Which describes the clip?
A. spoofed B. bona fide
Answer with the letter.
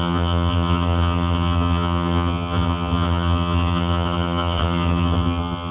A